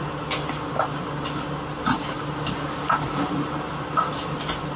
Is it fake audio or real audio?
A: real